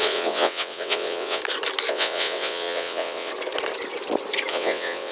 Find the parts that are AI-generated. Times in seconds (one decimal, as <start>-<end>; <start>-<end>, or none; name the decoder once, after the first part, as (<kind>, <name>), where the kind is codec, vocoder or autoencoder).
0.0-1.4 (vocoder, WaveNeXt); 1.9-3.3; 4.5-5.1